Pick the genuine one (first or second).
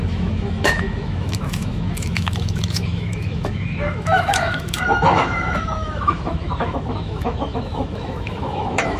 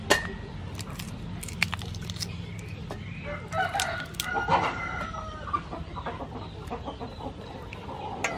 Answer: second